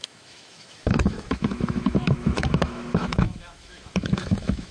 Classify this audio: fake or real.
fake